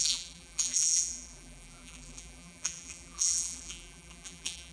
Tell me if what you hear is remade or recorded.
remade